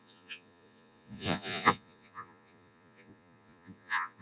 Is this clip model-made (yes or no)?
yes